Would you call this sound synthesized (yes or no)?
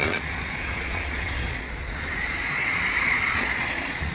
yes